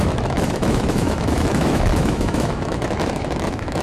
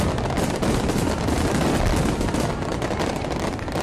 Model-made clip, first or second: first